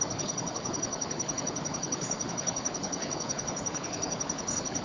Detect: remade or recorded remade